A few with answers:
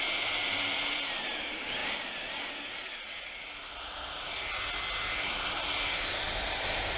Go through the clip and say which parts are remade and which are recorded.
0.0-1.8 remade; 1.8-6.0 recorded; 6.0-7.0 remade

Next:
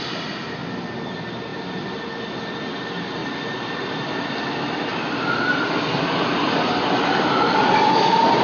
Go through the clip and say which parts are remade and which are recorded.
0.0-8.4 recorded

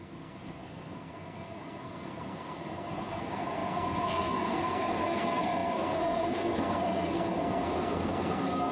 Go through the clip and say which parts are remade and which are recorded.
0.0-8.7 remade

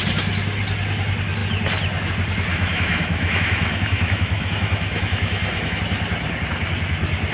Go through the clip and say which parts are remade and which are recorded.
0.0-2.5 recorded; 2.5-5.8 remade; 5.8-7.3 recorded

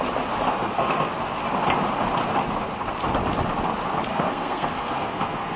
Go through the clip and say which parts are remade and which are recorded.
0.0-0.5 recorded; 0.5-1.1 remade; 1.1-4.1 recorded; 4.1-5.6 remade

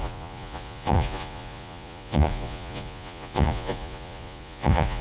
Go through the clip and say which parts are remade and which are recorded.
0.0-5.0 remade

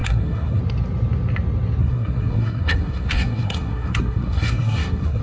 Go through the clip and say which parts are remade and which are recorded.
0.0-0.6 remade; 0.6-1.8 recorded; 1.8-5.2 remade

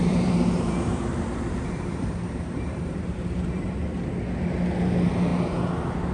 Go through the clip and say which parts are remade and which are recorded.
0.0-3.7 remade; 3.7-6.1 recorded